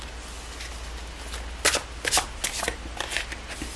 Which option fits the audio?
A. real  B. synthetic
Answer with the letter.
A